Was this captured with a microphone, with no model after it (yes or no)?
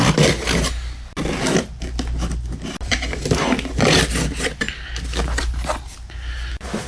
yes